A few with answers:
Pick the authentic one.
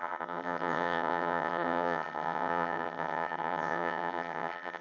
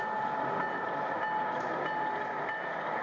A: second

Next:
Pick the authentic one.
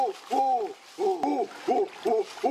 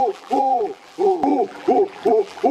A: first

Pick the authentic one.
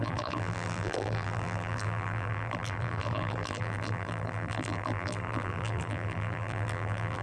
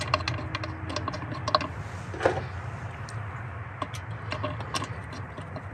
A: second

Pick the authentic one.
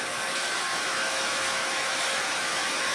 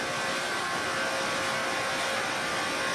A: second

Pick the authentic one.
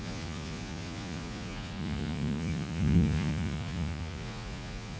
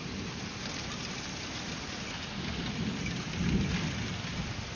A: second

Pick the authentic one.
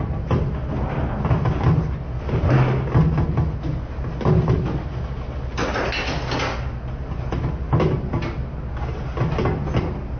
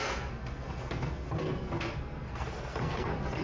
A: first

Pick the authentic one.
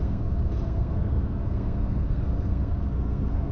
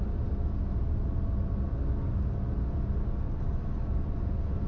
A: second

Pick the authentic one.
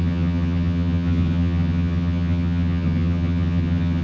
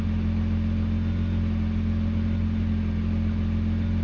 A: second